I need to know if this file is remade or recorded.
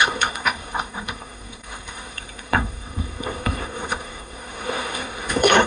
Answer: remade